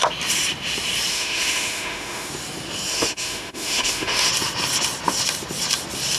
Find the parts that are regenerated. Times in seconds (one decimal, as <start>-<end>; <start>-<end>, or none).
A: 1.1-2.3; 2.9-4.3